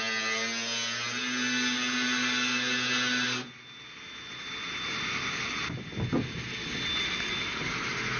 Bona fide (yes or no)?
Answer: yes